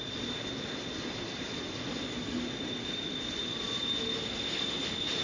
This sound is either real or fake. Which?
real